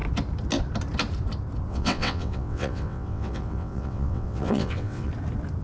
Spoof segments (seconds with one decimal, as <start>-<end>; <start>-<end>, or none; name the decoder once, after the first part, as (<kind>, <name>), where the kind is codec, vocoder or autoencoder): 1.7-5.1 (vocoder, WaveNeXt)